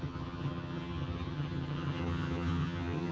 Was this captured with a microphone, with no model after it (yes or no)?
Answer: no